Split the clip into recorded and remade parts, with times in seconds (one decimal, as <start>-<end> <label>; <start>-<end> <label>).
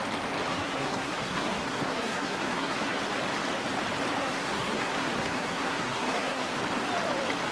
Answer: 0.0-0.5 recorded; 0.5-3.0 remade; 3.0-4.2 recorded; 4.2-6.6 remade; 6.6-7.5 recorded